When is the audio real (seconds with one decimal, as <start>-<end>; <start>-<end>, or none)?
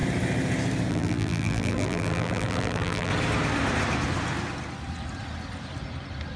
0.0-0.9; 3.1-6.4